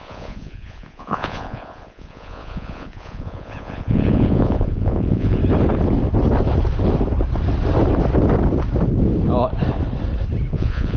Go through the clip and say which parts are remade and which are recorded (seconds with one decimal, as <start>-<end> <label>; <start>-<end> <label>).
0.0-5.4 remade; 5.4-10.5 recorded; 10.5-11.0 remade